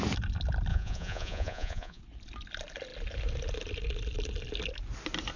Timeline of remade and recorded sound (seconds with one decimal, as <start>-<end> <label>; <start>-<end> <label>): 0.0-0.7 recorded; 0.7-2.0 remade; 2.0-5.4 recorded